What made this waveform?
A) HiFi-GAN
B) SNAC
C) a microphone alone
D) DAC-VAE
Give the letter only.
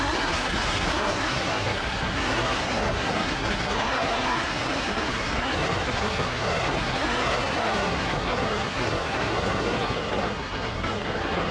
B